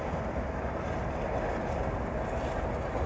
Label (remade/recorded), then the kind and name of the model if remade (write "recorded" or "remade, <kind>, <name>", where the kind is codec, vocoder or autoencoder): recorded